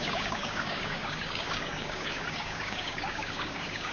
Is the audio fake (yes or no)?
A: yes